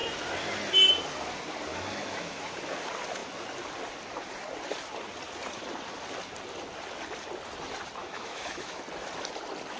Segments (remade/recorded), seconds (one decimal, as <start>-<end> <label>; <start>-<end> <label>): 0.0-1.7 recorded; 1.7-2.4 remade; 2.4-8.0 recorded; 8.0-8.8 remade; 8.8-9.8 recorded